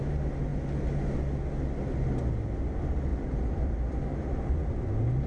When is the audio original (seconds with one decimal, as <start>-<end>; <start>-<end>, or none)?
0.0-5.3